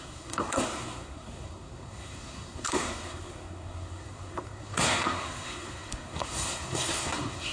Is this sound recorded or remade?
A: remade